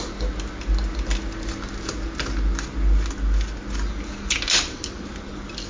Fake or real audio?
real